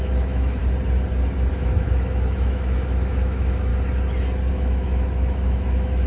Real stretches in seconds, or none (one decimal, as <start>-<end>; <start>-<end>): 0.6-1.5; 3.7-4.5